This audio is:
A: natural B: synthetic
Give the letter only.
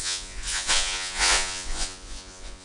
B